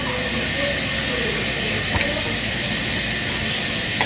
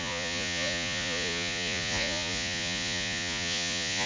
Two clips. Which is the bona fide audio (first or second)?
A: first